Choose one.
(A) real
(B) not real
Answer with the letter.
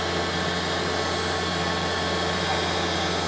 A